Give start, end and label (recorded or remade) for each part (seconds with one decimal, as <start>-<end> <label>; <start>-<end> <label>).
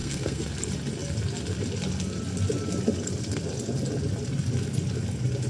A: 0.0-0.5 remade; 0.5-5.5 recorded